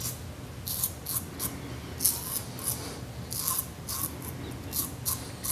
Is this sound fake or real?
real